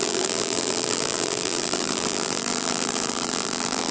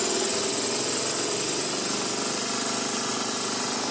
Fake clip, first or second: first